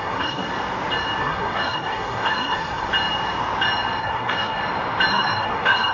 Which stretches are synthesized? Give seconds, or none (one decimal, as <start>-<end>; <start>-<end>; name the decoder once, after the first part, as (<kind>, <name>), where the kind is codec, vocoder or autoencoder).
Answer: 0.0-0.5 (codec, SNAC); 1.2-2.9; 4.0-4.6; 5.1-5.9